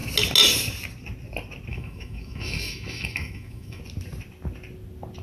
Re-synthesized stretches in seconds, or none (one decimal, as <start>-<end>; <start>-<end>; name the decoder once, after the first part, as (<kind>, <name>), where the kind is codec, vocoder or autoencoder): 1.7-3.8 (autoencoder, DAC-VAE)